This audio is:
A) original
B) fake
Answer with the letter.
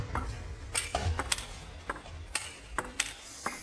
A